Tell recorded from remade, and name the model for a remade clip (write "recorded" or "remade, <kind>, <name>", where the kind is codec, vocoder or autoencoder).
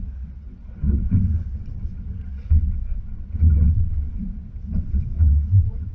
remade, vocoder, WaveNeXt